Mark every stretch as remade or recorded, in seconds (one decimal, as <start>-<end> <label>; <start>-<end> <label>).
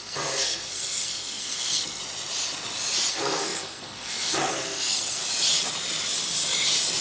0.0-2.0 remade; 2.0-3.1 recorded; 3.1-5.2 remade; 5.2-7.0 recorded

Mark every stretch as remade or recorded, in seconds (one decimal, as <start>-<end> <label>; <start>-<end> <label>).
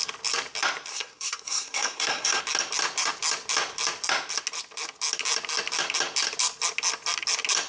0.0-0.9 recorded; 0.9-2.4 remade; 2.4-7.7 recorded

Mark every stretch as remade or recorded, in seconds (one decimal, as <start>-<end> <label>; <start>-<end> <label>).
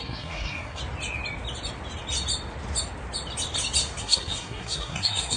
0.0-0.8 remade; 0.8-4.0 recorded; 4.0-5.4 remade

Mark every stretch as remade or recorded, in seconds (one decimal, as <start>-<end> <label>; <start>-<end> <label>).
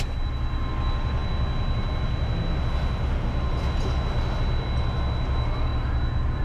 0.0-6.4 recorded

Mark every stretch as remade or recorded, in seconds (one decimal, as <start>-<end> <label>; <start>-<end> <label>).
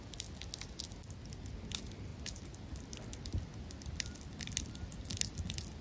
0.0-5.8 recorded